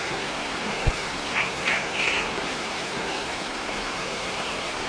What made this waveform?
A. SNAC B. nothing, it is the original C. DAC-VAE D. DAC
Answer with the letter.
A